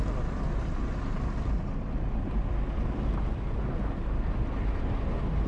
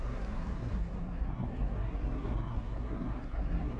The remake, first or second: second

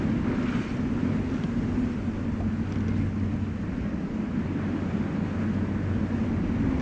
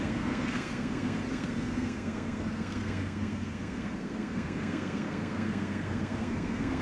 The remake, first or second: second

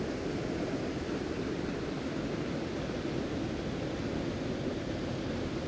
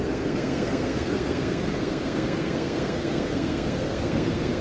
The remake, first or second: second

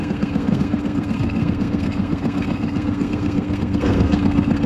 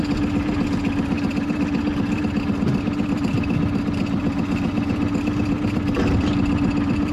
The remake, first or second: first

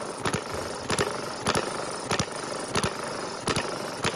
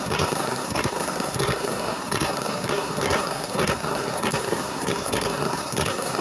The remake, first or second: second